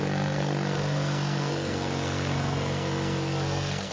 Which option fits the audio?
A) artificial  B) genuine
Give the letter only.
A